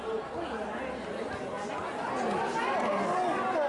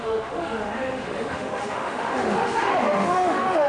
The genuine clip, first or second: first